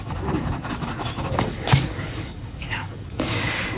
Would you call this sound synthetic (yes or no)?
yes